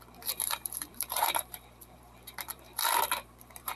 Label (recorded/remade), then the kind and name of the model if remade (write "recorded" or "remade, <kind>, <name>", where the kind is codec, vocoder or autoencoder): remade, vocoder, BigVGAN v2